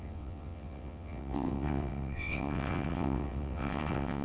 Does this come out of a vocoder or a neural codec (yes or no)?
yes